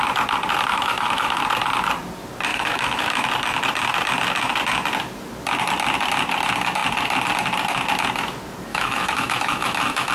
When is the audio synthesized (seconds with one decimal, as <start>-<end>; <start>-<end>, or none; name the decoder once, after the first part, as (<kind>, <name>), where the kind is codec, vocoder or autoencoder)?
0.7-1.4 (autoencoder, DAC-VAE); 2.5-3.3; 8.7-10.1